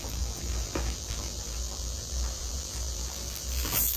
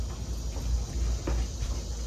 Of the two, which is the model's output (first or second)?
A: first